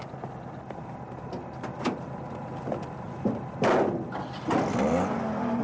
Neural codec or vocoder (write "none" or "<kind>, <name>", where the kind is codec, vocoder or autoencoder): none